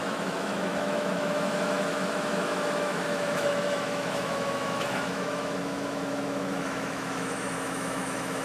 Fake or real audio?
fake